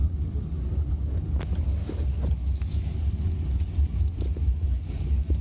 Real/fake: real